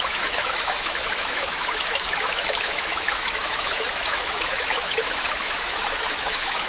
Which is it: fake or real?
fake